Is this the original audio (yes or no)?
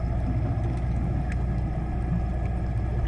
yes